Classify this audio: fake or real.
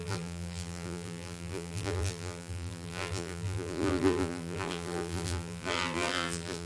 fake